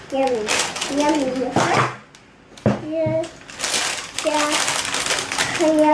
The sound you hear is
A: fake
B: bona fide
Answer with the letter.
B